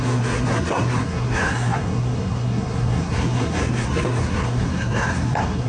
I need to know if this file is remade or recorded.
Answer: remade